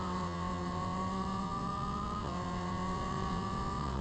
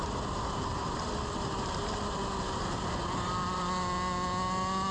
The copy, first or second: first